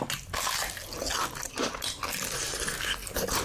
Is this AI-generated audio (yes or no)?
no